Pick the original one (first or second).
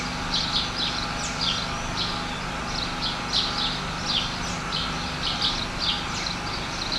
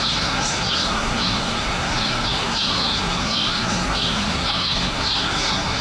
first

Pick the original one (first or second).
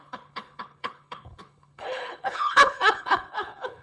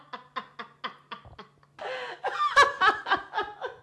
second